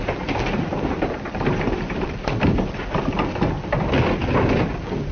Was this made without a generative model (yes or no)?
yes